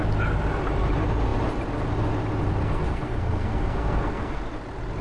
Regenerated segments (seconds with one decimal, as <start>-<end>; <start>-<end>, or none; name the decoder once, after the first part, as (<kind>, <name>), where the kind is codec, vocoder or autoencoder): 2.6-4.4 (codec, SNAC)